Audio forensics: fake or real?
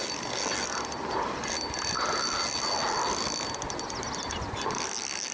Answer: real